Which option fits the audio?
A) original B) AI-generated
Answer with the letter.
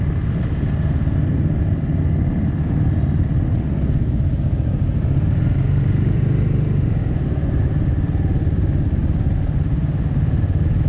A